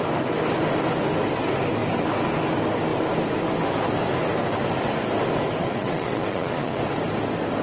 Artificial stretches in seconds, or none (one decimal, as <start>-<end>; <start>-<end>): 5.6-6.8